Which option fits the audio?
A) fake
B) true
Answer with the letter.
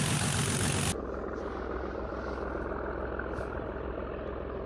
B